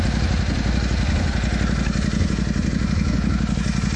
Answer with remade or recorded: recorded